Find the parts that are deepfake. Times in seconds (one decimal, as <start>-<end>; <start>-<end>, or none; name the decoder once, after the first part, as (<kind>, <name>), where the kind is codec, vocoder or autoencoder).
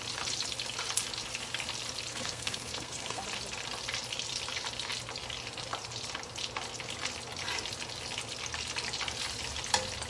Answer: 2.1-3.2 (codec, SNAC)